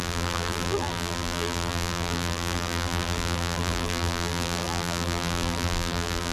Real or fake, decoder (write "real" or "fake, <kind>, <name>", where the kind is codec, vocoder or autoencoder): fake, vocoder, BigVGAN v2